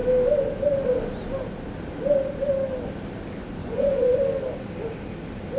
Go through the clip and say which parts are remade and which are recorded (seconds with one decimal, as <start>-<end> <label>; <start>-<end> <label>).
0.0-3.6 recorded; 3.6-4.2 remade; 4.2-5.6 recorded